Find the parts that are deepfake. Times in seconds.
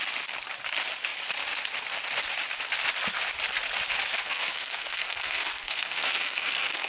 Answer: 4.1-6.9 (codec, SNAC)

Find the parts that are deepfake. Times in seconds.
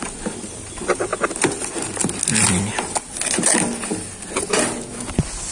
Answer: none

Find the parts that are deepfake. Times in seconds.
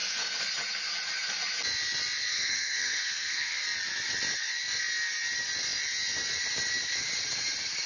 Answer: 2.3-3.6 (codec, SNAC)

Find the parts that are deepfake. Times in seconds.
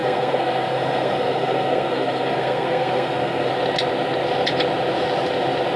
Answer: 0.0-3.5 (codec, SNAC)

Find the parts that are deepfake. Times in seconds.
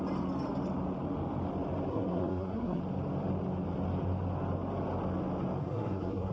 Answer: 1.9-2.8 (codec, SNAC); 5.6-6.3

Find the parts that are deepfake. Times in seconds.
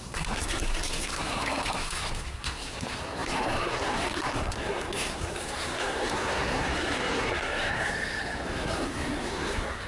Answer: 0.0-9.9 (codec, SNAC)